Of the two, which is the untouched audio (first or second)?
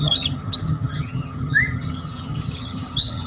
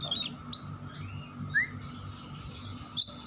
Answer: second